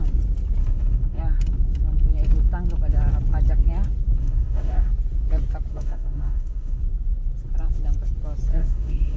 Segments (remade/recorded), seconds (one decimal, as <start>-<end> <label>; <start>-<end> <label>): 0.0-0.6 recorded; 0.6-1.2 remade; 1.2-4.2 recorded; 4.2-4.9 remade; 4.9-5.7 recorded; 5.7-6.8 remade; 6.8-8.6 recorded; 8.6-9.2 remade